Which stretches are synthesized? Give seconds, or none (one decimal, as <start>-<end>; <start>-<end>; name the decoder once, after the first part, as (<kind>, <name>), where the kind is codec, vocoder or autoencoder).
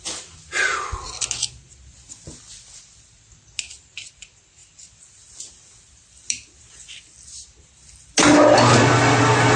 none